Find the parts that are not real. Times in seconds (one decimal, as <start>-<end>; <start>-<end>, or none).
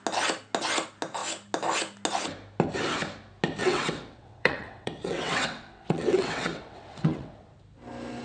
3.6-7.3